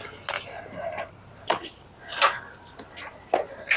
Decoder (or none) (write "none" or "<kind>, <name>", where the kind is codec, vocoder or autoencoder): none